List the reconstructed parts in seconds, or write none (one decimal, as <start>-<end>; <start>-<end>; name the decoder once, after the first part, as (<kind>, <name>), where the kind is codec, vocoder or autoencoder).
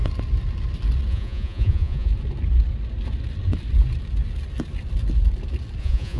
1.1-2.1 (vocoder, Vocos); 5.8-6.2